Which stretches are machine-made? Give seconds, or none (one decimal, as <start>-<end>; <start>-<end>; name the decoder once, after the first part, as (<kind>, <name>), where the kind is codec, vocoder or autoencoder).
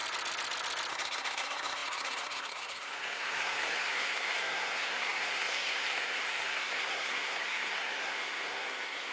0.9-9.1 (codec, SNAC)